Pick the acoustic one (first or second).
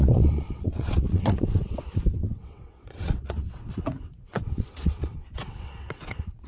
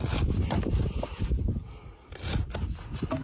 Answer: second